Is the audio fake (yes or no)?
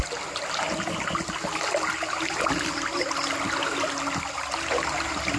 no